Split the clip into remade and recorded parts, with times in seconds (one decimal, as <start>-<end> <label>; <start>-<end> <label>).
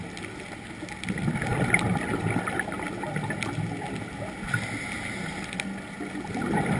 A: 0.0-6.8 recorded